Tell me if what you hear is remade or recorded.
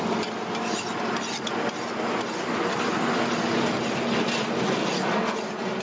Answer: recorded